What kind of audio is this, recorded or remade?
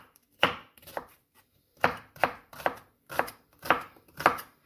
remade